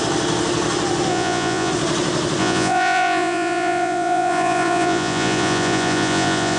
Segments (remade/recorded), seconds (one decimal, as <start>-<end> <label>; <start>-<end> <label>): 0.0-1.1 recorded; 1.1-1.7 remade; 1.7-2.4 recorded; 2.4-6.6 remade